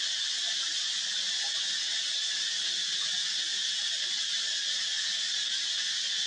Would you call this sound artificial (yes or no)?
no